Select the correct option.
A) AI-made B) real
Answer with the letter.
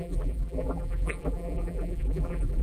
A